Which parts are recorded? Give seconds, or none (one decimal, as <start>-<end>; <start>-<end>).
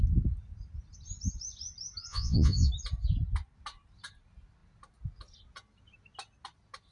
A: 0.0-2.1; 2.7-6.9